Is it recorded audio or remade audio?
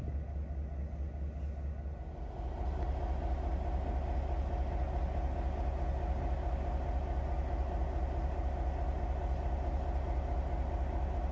recorded